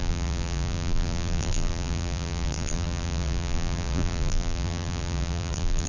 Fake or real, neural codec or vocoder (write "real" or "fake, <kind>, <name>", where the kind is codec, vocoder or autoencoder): fake, vocoder, BigVGAN v2